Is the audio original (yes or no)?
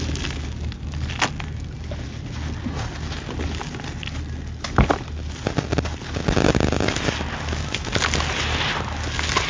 yes